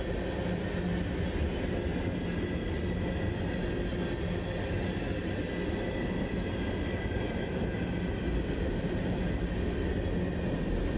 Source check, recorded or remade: recorded